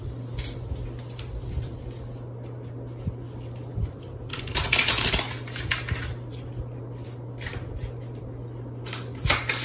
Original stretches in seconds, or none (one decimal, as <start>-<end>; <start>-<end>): 0.0-9.6

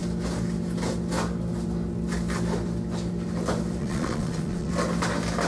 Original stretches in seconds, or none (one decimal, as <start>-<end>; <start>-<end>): 0.0-3.8; 4.7-5.5